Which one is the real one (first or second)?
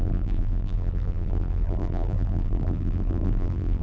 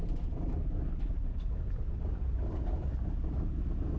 second